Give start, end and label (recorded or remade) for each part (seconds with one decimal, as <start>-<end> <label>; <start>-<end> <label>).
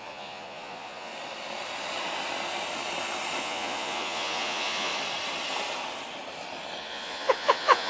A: 0.0-1.1 remade; 1.1-3.4 recorded; 3.4-4.9 remade; 4.9-6.8 recorded; 6.8-7.9 remade